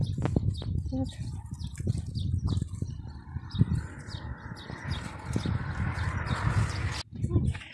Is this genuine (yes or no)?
yes